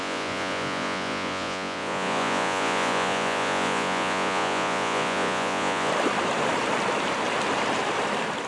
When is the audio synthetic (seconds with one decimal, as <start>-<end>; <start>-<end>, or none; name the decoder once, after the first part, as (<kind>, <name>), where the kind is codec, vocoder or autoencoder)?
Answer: 0.0-5.9 (vocoder, Vocos)